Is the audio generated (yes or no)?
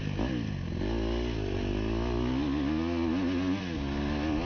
no